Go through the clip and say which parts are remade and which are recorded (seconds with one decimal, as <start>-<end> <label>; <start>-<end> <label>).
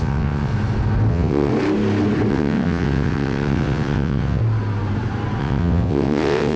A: 0.0-0.5 remade; 0.5-1.1 recorded; 1.1-1.5 remade; 1.5-2.3 recorded; 2.3-4.4 remade; 4.4-5.4 recorded; 5.4-6.6 remade